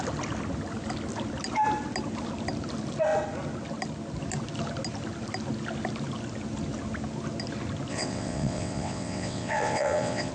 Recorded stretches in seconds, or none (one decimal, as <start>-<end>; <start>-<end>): 0.0-7.9